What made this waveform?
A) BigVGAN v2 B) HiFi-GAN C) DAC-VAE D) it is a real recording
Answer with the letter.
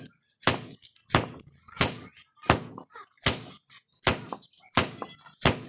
D